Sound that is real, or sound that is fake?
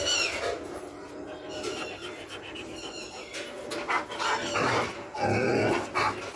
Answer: real